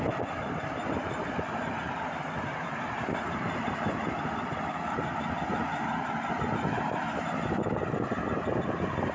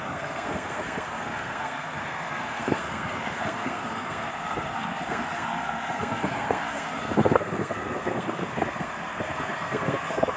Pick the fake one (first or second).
second